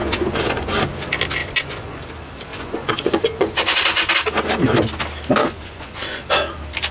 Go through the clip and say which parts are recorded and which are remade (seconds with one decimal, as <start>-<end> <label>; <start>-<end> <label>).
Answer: 0.0-0.8 remade; 0.8-1.4 recorded; 1.4-2.0 remade; 2.0-2.5 recorded; 2.5-4.1 remade; 4.1-5.4 recorded; 5.4-6.2 remade; 6.2-6.9 recorded